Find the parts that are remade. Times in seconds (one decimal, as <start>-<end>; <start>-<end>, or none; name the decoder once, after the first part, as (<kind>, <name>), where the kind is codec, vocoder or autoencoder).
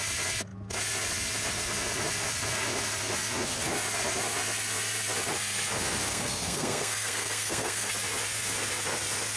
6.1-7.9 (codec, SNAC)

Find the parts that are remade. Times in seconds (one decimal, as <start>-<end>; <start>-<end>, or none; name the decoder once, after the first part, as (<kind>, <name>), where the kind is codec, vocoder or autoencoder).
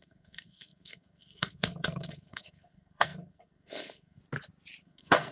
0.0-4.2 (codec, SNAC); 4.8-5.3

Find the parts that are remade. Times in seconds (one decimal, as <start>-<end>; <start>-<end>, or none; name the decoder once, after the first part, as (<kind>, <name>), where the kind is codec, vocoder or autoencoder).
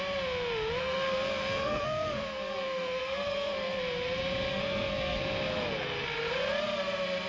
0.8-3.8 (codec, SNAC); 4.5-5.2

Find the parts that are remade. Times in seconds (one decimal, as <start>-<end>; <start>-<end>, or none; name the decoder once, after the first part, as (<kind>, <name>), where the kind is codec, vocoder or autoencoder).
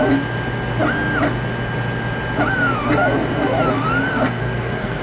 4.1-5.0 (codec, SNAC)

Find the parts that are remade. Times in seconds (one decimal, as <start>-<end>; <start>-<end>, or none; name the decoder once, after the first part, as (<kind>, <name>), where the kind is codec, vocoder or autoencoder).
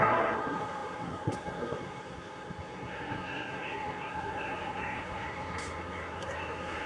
0.0-6.9 (codec, SNAC)